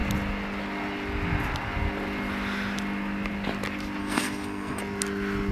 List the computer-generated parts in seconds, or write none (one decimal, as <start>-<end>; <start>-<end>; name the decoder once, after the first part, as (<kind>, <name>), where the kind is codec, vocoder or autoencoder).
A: 4.0-4.8 (codec, SNAC)